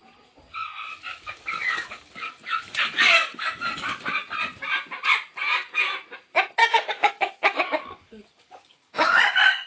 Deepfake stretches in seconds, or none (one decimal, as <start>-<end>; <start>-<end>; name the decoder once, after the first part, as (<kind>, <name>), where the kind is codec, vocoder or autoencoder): 1.1-4.0 (codec, DAC); 6.6-9.2